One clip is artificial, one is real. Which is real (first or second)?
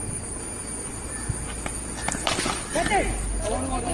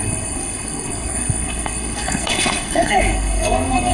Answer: first